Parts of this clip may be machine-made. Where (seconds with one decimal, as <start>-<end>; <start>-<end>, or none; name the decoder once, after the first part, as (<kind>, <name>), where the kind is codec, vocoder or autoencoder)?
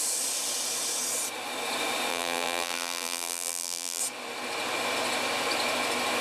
2.1-4.0 (vocoder, BigVGAN v2)